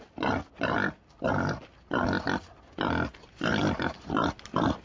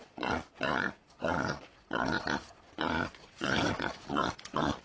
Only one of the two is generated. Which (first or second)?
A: second